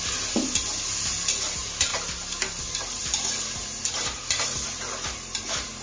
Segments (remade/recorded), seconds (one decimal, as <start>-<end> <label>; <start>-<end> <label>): 0.0-3.6 recorded; 3.6-4.2 remade; 4.2-5.8 recorded